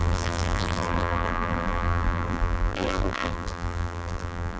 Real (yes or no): no